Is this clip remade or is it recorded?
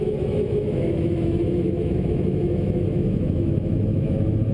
remade